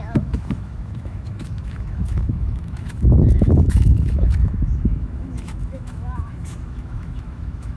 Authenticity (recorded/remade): remade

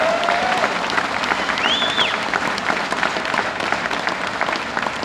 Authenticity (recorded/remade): recorded